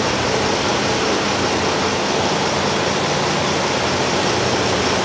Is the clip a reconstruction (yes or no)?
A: no